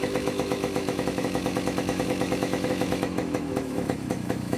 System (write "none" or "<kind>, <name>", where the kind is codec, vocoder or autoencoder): autoencoder, DAC-VAE